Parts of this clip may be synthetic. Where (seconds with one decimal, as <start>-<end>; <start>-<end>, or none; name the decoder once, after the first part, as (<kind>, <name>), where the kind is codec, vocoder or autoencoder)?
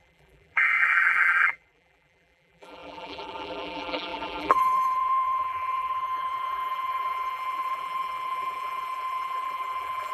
0.0-10.1 (vocoder, BigVGAN v2)